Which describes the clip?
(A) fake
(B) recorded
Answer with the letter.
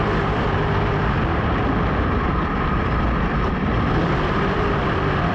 A